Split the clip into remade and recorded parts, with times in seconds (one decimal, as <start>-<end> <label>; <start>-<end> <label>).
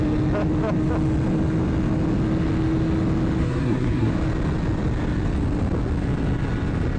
0.0-3.4 recorded; 3.4-4.1 remade; 4.1-7.0 recorded